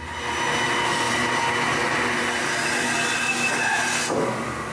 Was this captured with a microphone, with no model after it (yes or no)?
yes